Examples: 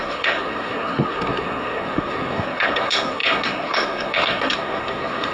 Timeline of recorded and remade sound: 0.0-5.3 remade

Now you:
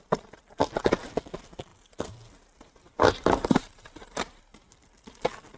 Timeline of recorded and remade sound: 0.0-1.7 remade; 1.7-4.4 recorded; 4.4-5.6 remade

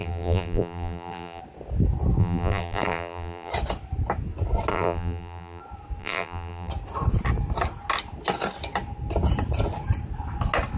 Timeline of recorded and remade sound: 0.0-1.4 remade; 1.4-2.2 recorded; 2.2-3.5 remade; 3.5-4.7 recorded; 4.7-5.6 remade; 5.6-6.0 recorded; 6.0-6.7 remade; 6.7-10.8 recorded

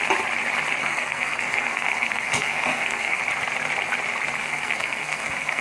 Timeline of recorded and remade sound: 0.0-0.8 recorded; 0.8-3.2 remade; 3.2-4.4 recorded; 4.4-5.6 remade

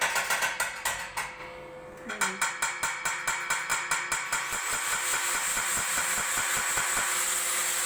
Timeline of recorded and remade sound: 0.0-7.9 recorded

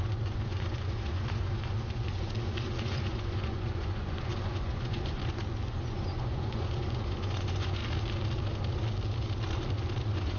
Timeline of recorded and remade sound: 0.0-5.2 remade; 5.2-5.8 recorded; 5.8-7.8 remade; 7.8-10.0 recorded; 10.0-10.4 remade

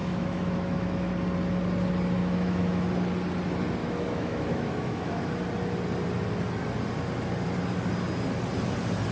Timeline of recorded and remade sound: 0.0-1.1 remade; 1.1-2.2 recorded; 2.2-2.9 remade; 2.9-3.8 recorded; 3.8-5.3 remade; 5.3-9.1 recorded

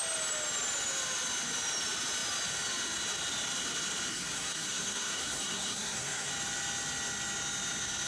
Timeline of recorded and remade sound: 0.0-4.1 recorded; 4.1-6.3 remade; 6.3-8.1 recorded